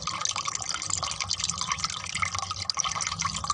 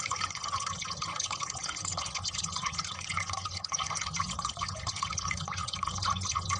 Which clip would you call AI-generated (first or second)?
second